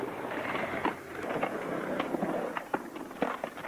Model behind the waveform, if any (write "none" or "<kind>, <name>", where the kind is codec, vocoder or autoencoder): none